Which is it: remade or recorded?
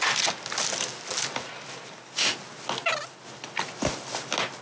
recorded